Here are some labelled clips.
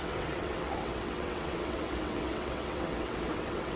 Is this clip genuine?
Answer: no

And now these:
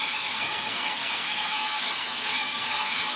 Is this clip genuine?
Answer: no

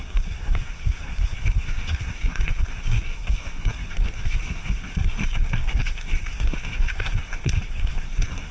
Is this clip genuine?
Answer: no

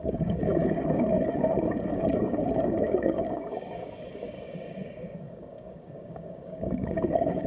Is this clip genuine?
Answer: no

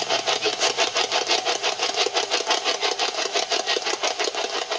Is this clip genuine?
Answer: yes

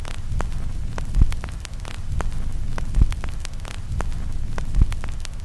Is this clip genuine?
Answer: yes